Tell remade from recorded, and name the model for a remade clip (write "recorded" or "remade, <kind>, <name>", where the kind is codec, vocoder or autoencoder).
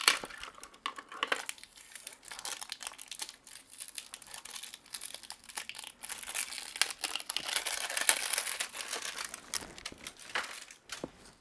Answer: recorded